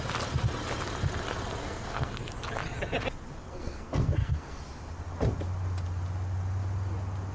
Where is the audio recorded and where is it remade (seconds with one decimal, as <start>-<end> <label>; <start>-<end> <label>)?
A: 0.0-1.6 recorded; 1.6-2.3 remade; 2.3-3.4 recorded; 3.4-4.6 remade; 4.6-7.3 recorded